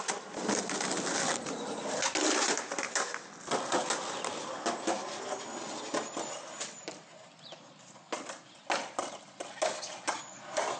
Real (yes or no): yes